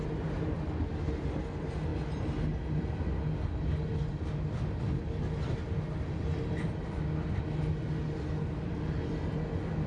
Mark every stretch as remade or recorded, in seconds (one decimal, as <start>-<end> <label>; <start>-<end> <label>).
0.0-9.9 recorded